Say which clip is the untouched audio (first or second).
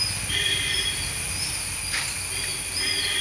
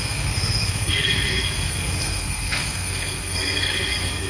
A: first